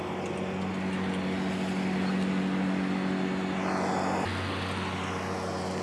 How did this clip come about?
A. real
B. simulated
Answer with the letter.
A